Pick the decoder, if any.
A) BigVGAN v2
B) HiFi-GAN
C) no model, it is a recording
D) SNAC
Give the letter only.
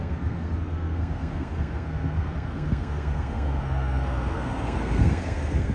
D